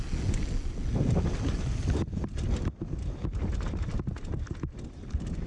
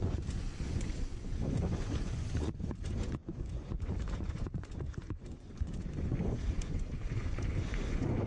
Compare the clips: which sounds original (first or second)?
first